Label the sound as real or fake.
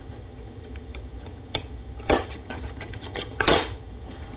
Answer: fake